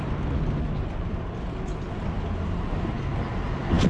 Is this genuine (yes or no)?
yes